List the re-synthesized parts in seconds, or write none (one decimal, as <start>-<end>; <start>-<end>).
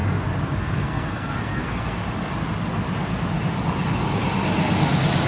0.6-2.0